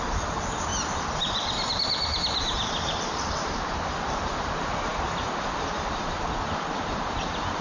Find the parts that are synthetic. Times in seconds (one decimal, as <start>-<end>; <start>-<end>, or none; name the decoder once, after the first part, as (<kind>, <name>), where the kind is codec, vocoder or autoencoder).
0.7-4.4 (vocoder, BigVGAN v2)